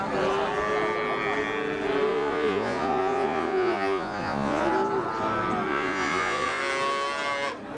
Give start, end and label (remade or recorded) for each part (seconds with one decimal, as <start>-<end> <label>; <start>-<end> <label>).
0.0-2.1 recorded; 2.1-4.7 remade; 4.7-5.7 recorded; 5.7-6.6 remade; 6.6-7.8 recorded